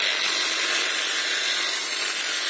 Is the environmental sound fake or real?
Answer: real